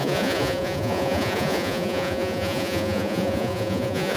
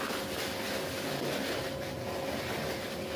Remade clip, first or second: first